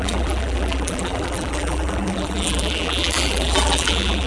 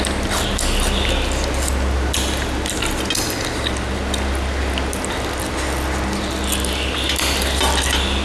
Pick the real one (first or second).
second